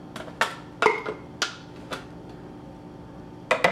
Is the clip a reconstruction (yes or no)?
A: no